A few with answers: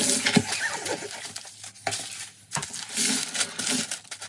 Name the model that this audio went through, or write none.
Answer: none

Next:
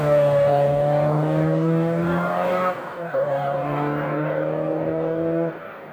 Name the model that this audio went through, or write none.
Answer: codec, DAC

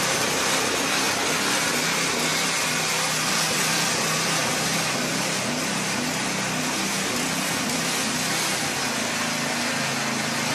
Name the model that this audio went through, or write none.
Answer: none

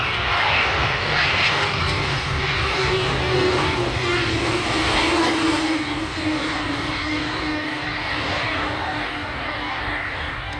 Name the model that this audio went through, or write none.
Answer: codec, DAC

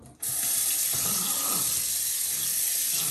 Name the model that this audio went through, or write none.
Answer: none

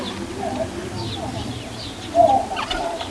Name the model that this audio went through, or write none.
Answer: none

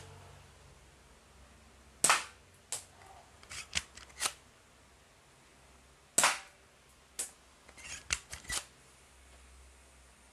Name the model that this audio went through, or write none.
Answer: none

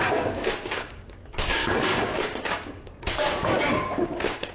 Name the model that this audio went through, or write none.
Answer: codec, DAC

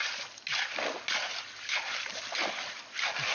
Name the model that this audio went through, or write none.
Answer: none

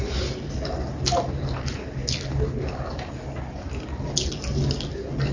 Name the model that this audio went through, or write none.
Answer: none